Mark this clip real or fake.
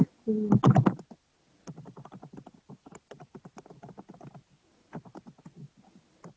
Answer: real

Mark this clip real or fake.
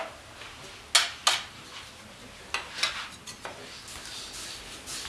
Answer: real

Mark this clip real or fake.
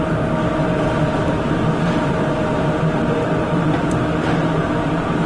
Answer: fake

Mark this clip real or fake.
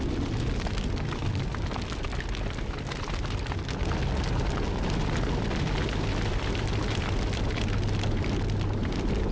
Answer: real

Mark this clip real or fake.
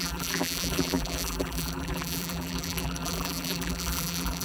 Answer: fake